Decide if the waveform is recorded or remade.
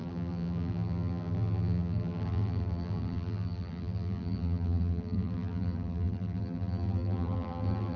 remade